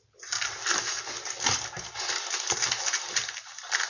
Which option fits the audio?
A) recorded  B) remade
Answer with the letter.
A